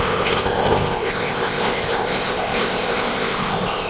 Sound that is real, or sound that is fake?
fake